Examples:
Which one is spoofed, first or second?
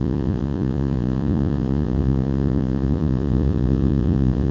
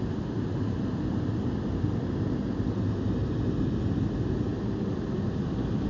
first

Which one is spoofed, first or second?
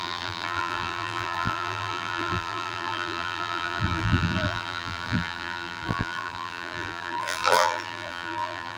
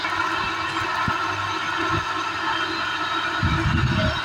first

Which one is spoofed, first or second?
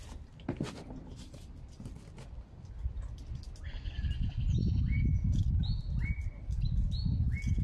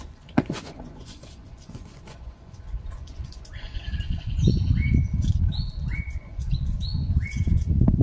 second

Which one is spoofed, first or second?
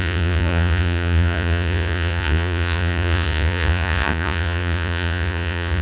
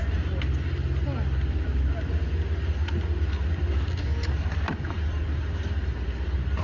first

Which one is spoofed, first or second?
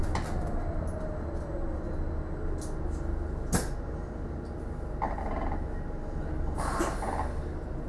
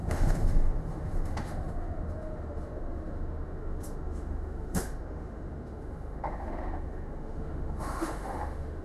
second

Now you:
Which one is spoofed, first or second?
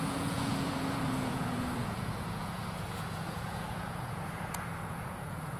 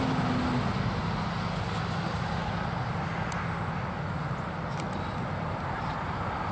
first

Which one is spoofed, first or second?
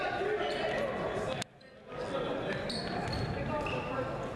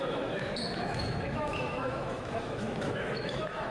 second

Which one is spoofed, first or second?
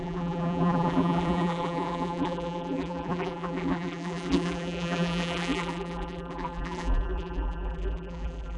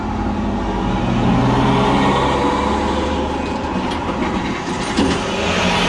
first